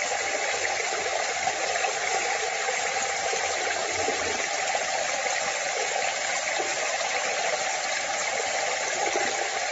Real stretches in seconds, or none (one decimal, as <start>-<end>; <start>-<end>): 0.0-1.1; 4.2-5.6; 7.7-9.7